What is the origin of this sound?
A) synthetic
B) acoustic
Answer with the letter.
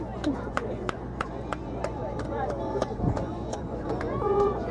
A